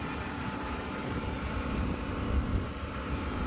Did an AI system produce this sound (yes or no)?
no